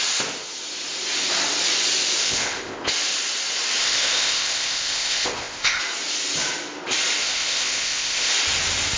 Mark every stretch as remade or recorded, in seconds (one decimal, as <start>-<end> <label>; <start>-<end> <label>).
0.0-2.2 recorded; 2.2-2.9 remade; 2.9-3.8 recorded; 3.8-5.8 remade; 5.8-7.2 recorded; 7.2-8.3 remade; 8.3-9.0 recorded